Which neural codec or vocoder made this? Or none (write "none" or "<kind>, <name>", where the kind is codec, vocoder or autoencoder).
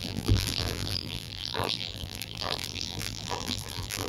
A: vocoder, BigVGAN v2